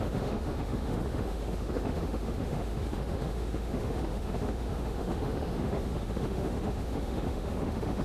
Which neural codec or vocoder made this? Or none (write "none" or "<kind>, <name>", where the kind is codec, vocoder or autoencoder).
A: autoencoder, DAC-VAE